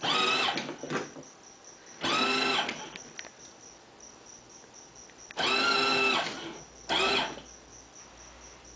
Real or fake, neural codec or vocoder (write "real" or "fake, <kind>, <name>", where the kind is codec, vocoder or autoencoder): real